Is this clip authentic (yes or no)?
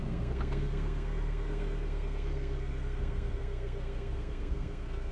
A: no